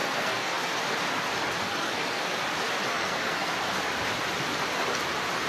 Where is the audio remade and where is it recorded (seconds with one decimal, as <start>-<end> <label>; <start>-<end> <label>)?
0.0-0.8 remade; 0.8-1.6 recorded; 1.6-2.4 remade; 2.4-2.9 recorded; 2.9-3.5 remade; 3.5-5.5 recorded